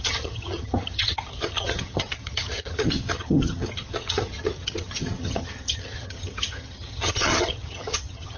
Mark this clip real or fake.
fake